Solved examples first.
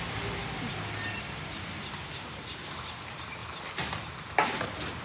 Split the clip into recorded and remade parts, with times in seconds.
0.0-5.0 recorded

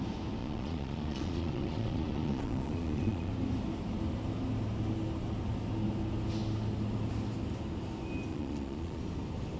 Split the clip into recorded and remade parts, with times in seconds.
0.0-0.4 recorded; 0.4-3.3 remade; 3.3-8.3 recorded; 8.3-9.0 remade; 9.0-9.6 recorded

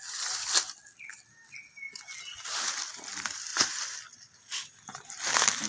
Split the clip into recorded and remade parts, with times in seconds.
0.0-5.7 recorded

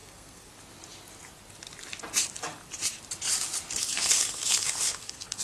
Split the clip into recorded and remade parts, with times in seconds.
0.0-0.5 remade; 0.5-3.8 recorded; 3.8-5.4 remade

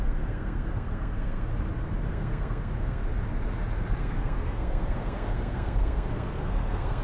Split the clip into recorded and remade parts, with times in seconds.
0.0-1.5 remade; 1.5-2.1 recorded; 2.1-3.0 remade; 3.0-4.0 recorded; 4.0-7.0 remade

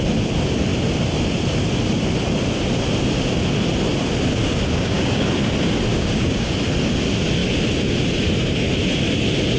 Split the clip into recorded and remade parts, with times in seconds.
0.0-4.4 recorded; 4.4-5.3 remade; 5.3-5.9 recorded; 5.9-6.5 remade; 6.5-9.6 recorded

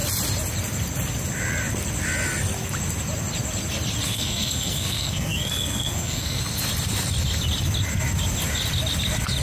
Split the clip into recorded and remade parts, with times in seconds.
0.0-4.1 recorded; 4.1-6.4 remade; 6.4-9.4 recorded

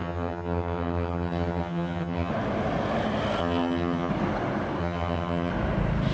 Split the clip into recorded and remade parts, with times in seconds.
0.0-2.3 remade; 2.3-3.4 recorded; 3.4-4.1 remade; 4.1-4.8 recorded; 4.8-5.5 remade; 5.5-6.1 recorded